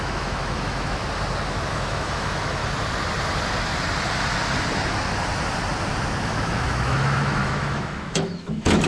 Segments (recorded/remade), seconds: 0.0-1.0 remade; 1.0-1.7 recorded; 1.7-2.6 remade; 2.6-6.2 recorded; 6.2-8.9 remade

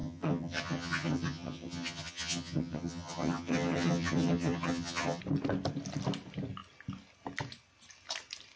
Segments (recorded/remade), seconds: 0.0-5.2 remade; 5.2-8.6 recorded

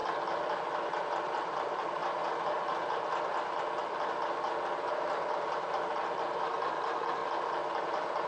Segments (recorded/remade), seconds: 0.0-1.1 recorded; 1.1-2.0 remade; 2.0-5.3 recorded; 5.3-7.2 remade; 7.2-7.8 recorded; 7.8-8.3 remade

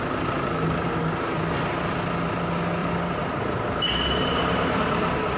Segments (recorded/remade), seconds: 0.0-2.8 recorded; 2.8-3.7 remade; 3.7-4.3 recorded; 4.3-5.0 remade; 5.0-5.4 recorded